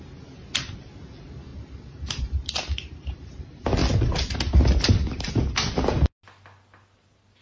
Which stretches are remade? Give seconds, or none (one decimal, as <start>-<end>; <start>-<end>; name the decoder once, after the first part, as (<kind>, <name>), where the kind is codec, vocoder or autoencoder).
1.5-3.4 (vocoder, BigVGAN v2)